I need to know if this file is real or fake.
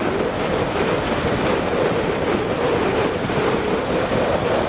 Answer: real